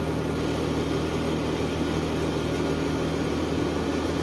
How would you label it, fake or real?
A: real